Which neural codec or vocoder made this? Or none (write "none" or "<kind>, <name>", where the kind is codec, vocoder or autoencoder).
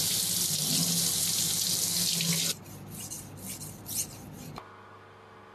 none